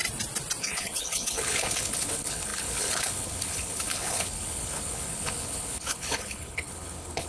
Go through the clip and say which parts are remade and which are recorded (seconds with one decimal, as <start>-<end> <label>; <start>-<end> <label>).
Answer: 0.0-0.6 recorded; 0.6-7.3 remade